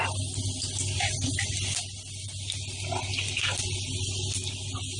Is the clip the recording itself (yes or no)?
yes